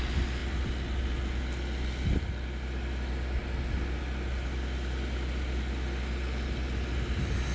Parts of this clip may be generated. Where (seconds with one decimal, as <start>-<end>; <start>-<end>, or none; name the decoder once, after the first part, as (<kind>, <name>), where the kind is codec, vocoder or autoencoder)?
none